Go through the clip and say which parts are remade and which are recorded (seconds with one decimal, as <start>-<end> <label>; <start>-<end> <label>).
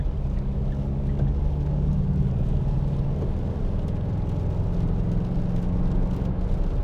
0.0-3.6 remade; 3.6-6.8 recorded